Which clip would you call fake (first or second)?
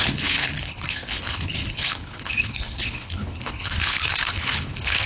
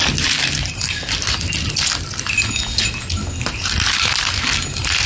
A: first